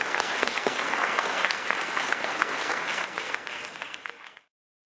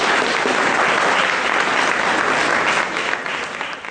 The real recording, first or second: second